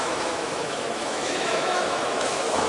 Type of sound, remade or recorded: remade